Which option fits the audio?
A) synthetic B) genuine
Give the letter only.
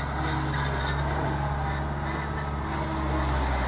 B